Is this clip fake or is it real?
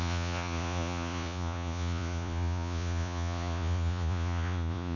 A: fake